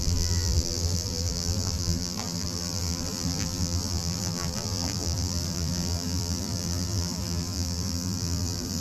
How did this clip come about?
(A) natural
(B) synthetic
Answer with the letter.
B